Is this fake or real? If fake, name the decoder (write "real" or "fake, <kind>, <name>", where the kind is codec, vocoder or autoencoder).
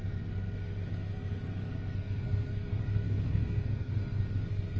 fake, codec, SNAC